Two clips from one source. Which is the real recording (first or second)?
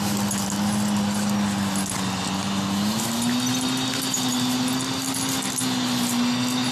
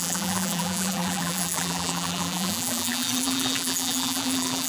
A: first